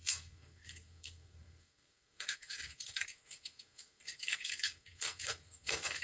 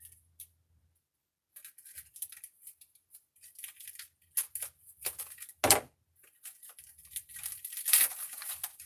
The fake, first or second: first